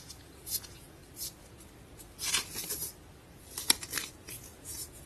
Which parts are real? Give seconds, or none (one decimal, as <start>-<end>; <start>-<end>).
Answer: 1.0-4.1